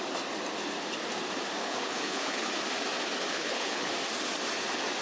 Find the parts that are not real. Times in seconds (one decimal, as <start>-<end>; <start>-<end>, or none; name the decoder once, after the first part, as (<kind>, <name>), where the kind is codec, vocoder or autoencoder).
1.6-2.5 (codec, HILCodec); 3.3-3.9